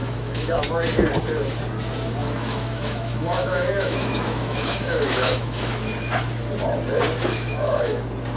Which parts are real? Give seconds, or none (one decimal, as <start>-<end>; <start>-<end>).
0.6-2.2; 5.7-7.3; 8.0-8.4